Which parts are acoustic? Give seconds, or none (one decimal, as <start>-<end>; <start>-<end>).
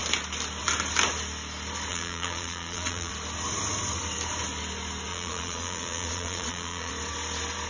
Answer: 0.0-1.9; 3.1-5.1; 6.9-7.7